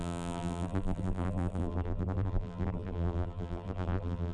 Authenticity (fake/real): fake